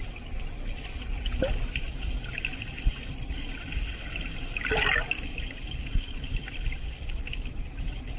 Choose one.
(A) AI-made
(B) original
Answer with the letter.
B